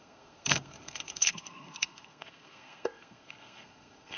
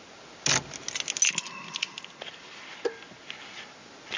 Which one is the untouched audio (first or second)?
second